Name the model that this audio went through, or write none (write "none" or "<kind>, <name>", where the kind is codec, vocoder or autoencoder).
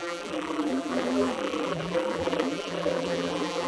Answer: vocoder, BigVGAN v2